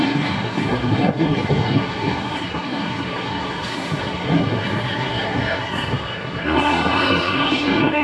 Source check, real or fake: fake